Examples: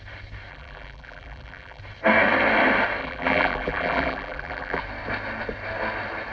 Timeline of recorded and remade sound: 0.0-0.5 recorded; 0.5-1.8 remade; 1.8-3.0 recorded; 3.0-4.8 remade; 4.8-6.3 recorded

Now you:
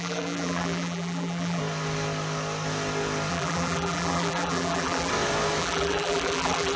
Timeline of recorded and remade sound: 0.0-1.6 remade; 1.6-3.3 recorded; 3.3-5.1 remade; 5.1-5.6 recorded; 5.6-6.8 remade

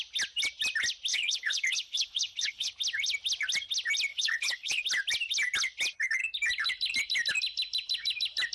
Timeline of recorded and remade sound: 0.0-1.1 recorded; 1.1-2.7 remade; 2.7-4.1 recorded; 4.1-4.8 remade; 4.8-8.5 recorded

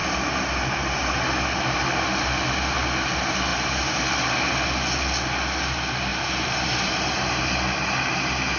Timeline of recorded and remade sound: 0.0-1.2 remade; 1.2-3.5 recorded; 3.5-4.1 remade; 4.1-6.1 recorded; 6.1-7.4 remade; 7.4-8.6 recorded